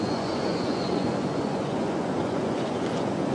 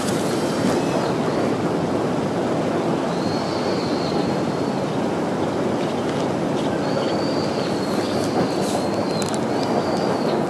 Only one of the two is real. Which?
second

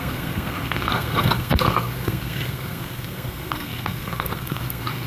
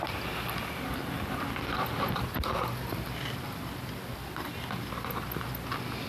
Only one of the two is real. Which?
second